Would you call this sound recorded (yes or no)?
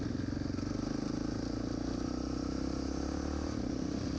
yes